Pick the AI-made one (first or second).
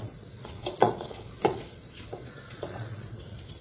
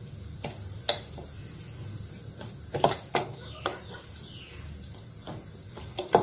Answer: first